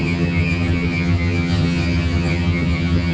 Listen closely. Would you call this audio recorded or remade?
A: remade